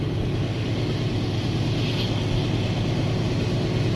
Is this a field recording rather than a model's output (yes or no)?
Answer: yes